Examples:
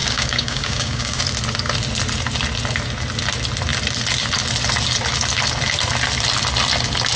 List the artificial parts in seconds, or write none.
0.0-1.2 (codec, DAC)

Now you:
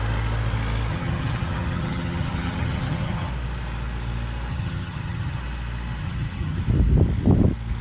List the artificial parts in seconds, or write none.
0.9-3.3 (vocoder, HiFi-GAN); 4.5-5.4; 6.0-6.6

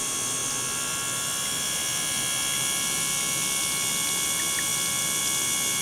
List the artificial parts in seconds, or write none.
none

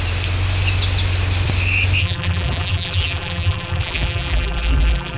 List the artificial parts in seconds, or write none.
2.0-5.2 (vocoder, BigVGAN v2)

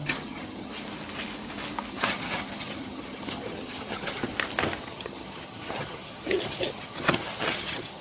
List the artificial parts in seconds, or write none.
0.0-0.7 (vocoder, HiFi-GAN); 1.9-4.3; 4.8-8.0